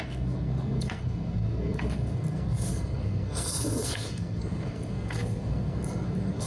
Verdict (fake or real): fake